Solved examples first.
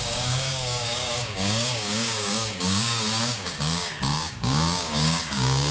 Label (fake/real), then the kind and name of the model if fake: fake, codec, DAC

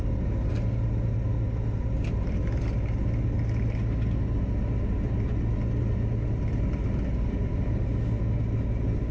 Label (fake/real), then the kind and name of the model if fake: real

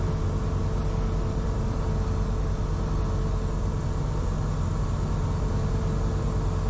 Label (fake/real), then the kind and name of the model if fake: real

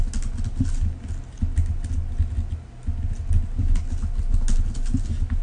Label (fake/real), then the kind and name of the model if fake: real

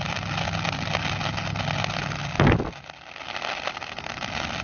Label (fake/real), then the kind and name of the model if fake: real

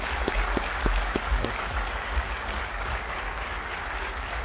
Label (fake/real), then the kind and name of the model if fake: fake, codec, DAC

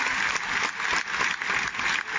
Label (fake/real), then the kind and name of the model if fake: real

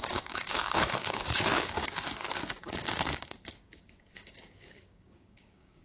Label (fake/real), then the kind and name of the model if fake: fake, codec, DAC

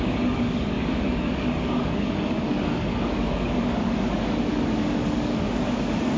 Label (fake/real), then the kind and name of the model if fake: fake, codec, DAC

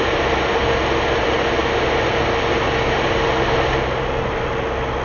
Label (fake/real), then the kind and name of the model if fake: real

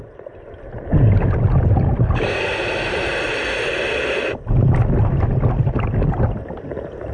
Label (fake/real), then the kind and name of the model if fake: real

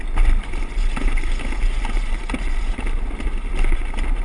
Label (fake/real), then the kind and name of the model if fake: real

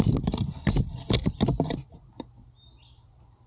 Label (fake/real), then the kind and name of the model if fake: real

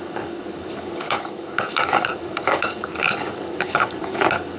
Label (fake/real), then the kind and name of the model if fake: fake, codec, DAC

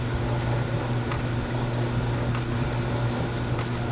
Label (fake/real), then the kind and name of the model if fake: real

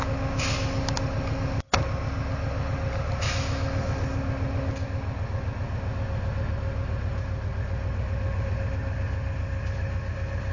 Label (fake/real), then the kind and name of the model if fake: real